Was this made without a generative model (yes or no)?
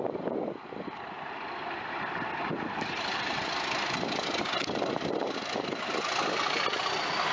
yes